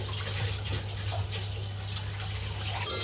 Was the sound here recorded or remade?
recorded